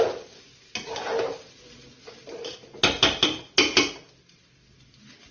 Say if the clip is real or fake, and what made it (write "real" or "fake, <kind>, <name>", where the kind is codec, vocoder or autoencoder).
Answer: real